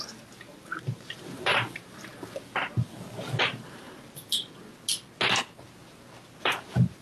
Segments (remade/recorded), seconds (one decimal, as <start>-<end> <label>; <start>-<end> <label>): 0.0-2.1 remade; 2.1-3.4 recorded; 3.4-4.4 remade; 4.4-6.4 recorded; 6.4-7.0 remade